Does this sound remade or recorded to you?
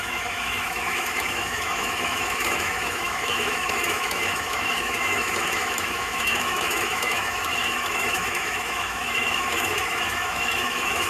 remade